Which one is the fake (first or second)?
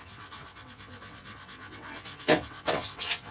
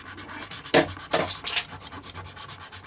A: first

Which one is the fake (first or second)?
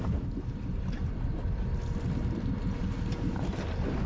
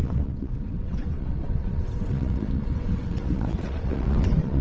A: second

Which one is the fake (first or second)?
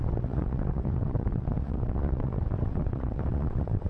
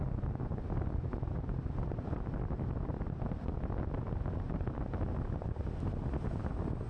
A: first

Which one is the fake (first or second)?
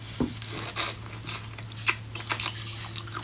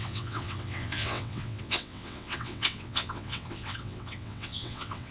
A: second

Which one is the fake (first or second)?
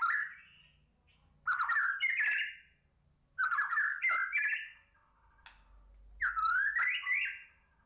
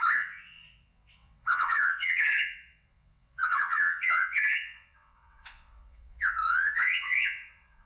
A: second